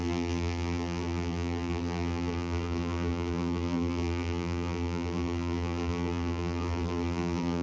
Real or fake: fake